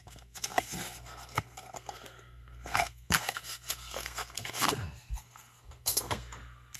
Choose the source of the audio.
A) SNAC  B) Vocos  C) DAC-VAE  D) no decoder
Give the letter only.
A